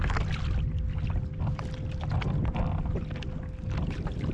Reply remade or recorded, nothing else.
recorded